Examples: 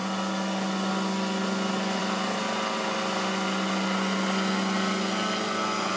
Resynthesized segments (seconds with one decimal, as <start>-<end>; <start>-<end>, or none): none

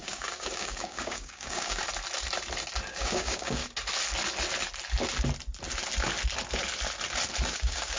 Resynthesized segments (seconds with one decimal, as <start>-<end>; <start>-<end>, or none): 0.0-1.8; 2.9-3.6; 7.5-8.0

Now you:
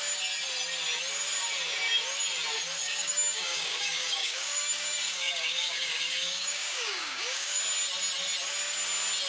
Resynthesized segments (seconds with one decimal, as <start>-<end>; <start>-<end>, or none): 2.8-7.6

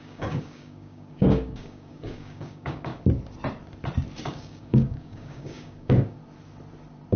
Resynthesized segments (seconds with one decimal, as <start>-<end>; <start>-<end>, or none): 0.0-2.9; 4.2-6.2